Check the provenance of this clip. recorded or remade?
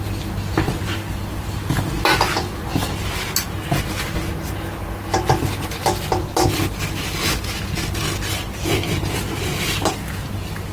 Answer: recorded